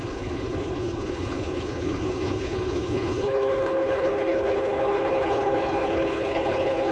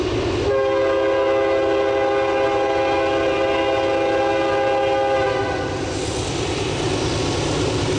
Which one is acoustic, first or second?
second